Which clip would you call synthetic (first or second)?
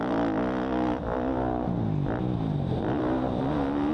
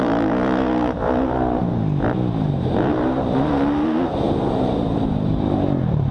second